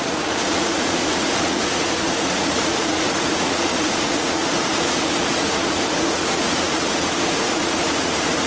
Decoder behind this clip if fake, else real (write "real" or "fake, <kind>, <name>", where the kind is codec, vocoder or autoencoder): fake, vocoder, Vocos